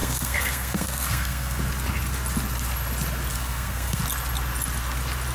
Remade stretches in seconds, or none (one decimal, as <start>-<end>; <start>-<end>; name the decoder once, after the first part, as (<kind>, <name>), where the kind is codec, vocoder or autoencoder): 0.0-1.6 (codec, SNAC); 3.3-4.0